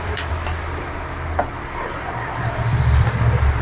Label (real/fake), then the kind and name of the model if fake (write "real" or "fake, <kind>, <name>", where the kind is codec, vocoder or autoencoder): fake, vocoder, BigVGAN v2